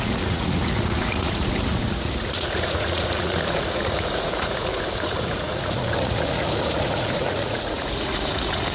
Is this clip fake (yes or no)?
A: yes